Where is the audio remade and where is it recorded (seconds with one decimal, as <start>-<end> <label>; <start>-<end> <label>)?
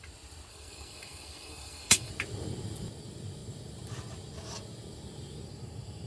0.0-0.5 recorded; 0.5-2.1 remade; 2.1-6.1 recorded